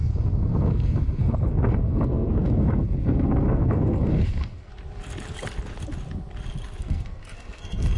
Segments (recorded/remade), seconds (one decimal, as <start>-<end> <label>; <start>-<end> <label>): 0.0-4.7 remade; 4.7-6.8 recorded; 6.8-8.0 remade